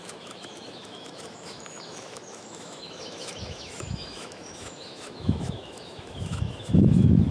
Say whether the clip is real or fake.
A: fake